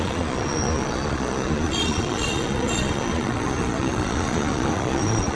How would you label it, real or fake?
fake